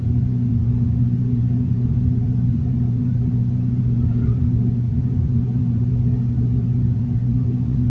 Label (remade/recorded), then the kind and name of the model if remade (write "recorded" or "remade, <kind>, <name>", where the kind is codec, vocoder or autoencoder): remade, vocoder, Vocos